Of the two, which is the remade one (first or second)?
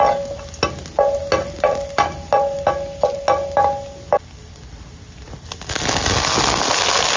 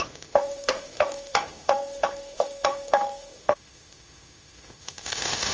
second